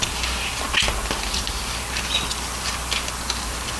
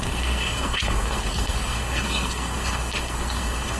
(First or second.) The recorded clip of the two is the first